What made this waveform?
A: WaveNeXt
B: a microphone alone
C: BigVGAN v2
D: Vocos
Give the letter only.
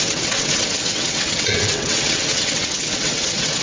A